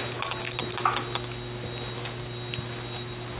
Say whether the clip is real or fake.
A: real